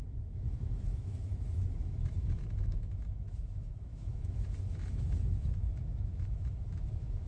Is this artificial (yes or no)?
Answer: yes